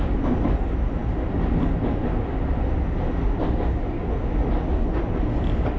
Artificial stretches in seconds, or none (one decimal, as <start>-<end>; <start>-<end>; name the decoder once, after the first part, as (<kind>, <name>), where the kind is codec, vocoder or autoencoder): none